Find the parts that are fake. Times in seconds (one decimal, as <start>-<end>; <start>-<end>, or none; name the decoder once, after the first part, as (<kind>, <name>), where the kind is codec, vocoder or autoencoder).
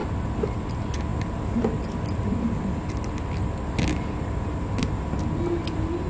none